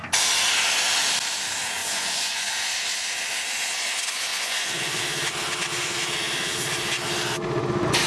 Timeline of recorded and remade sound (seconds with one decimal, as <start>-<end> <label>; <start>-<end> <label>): 0.0-1.8 recorded; 1.8-2.5 remade; 2.5-4.3 recorded; 4.3-5.0 remade; 5.0-8.1 recorded